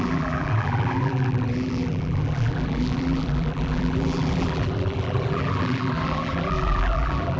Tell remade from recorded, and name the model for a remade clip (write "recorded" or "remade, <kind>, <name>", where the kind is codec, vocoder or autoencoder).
remade, vocoder, BigVGAN v2